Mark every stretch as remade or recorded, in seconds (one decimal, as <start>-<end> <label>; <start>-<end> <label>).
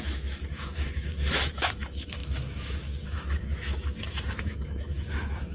0.0-5.5 remade